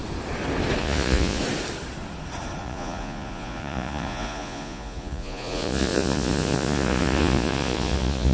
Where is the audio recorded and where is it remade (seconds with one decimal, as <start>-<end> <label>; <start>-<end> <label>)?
0.0-0.8 recorded; 0.8-1.4 remade; 1.4-2.6 recorded; 2.6-8.3 remade